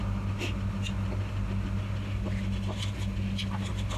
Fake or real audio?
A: real